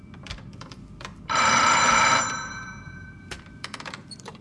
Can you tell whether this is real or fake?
fake